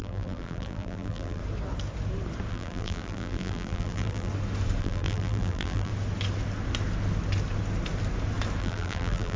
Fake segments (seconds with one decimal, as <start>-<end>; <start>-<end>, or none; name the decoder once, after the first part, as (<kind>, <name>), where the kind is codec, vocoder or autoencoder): 0.0-1.4 (vocoder, BigVGAN v2); 2.5-4.3; 4.8-5.9; 8.6-9.4